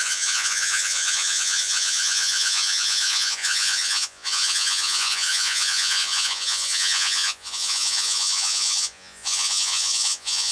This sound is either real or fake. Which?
fake